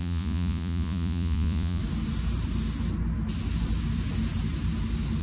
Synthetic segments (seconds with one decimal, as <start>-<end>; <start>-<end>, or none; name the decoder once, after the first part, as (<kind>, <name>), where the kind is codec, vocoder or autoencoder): 0.0-1.8 (vocoder, Vocos)